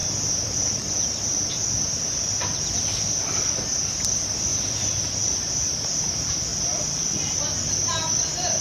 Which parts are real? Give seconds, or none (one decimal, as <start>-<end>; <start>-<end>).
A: 0.6-4.5; 5.5-8.6